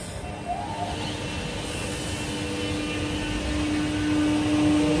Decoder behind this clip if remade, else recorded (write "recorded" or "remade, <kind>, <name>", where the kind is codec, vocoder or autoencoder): recorded